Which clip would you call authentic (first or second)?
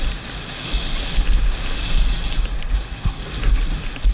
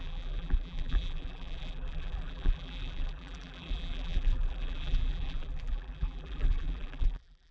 first